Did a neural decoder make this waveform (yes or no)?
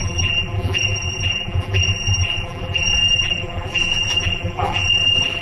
yes